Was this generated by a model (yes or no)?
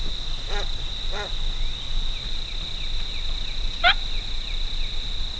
no